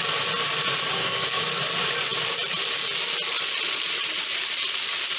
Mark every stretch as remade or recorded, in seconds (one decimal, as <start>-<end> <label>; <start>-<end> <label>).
0.0-1.0 recorded; 1.0-1.5 remade; 1.5-5.2 recorded